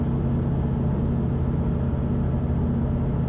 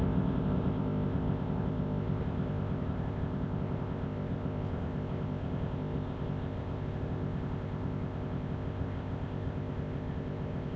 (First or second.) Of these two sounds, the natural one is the first